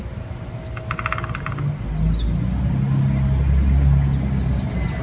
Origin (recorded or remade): recorded